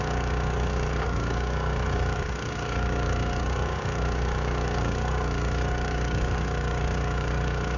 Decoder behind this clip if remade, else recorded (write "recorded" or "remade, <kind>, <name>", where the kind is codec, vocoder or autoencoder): remade, codec, DAC